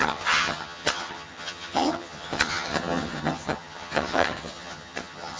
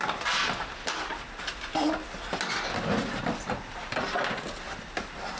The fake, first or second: first